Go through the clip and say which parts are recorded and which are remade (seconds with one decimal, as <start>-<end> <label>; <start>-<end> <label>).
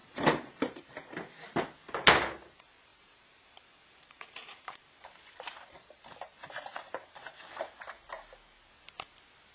0.0-0.8 remade; 0.8-2.9 recorded; 2.9-7.8 remade; 7.8-9.5 recorded